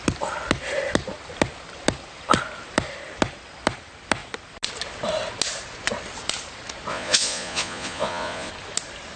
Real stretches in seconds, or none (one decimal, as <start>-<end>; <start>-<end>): 0.0-6.9; 8.5-9.2